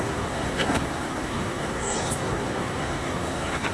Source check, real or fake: fake